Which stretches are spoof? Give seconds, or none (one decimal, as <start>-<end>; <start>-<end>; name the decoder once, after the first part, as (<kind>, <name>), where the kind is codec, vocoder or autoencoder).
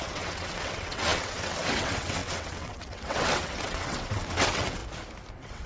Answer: 0.0-4.8 (vocoder, WaveNeXt); 5.3-5.7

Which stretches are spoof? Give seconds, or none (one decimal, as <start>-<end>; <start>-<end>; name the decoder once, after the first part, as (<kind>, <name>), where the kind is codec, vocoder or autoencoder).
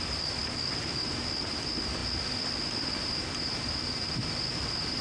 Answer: none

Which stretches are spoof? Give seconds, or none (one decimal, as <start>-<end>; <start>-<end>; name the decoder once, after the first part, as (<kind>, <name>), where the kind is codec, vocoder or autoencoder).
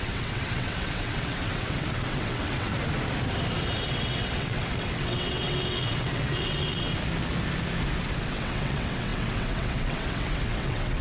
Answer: 0.0-2.7 (vocoder, WaveNeXt); 3.8-6.9; 8.3-11.0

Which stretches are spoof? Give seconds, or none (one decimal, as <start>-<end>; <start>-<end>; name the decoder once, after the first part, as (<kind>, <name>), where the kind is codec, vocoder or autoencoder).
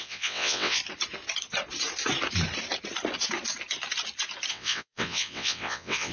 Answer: 0.0-0.8 (vocoder, WaveNeXt); 4.5-6.1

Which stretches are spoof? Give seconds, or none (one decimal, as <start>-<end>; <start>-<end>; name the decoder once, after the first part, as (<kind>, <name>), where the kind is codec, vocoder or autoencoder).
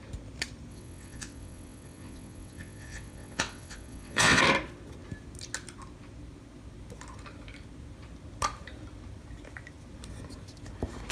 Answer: 0.7-4.4 (vocoder, WaveNeXt)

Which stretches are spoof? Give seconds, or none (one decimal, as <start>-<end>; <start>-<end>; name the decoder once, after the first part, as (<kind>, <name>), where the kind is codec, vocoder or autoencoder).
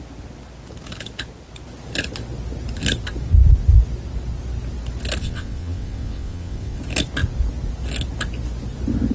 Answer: 5.2-6.8 (vocoder, WaveNeXt)